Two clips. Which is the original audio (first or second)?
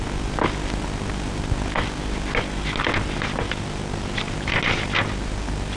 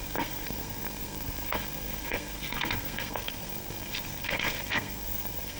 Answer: first